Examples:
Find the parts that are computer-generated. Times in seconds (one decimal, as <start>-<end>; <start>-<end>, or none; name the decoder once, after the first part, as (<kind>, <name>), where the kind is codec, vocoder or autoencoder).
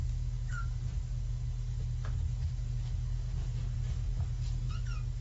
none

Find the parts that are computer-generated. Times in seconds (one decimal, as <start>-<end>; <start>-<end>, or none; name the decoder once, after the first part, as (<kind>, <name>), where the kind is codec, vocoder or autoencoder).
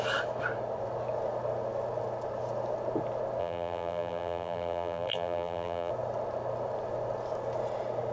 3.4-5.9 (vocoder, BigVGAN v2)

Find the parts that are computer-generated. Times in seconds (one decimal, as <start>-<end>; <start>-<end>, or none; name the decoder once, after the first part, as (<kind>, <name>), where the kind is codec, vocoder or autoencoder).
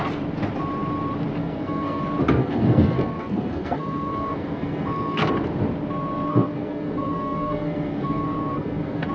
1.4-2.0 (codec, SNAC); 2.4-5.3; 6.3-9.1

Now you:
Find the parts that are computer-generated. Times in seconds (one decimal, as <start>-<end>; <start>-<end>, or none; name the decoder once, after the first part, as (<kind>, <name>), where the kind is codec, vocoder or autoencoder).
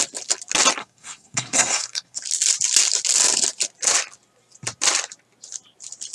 0.8-2.2 (codec, SNAC)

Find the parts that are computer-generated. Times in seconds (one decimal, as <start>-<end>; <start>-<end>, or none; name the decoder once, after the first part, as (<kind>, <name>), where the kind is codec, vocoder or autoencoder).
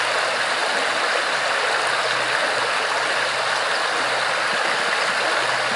none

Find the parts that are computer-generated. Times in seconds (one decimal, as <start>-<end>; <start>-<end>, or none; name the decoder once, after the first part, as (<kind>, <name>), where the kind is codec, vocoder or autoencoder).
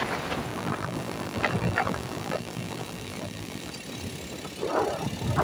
0.5-3.7 (vocoder, BigVGAN v2)